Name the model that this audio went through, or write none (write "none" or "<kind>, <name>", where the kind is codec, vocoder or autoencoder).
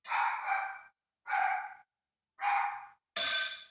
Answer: none